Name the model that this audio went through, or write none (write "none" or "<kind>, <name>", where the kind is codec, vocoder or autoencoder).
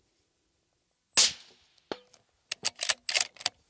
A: none